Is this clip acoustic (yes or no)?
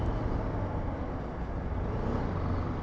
yes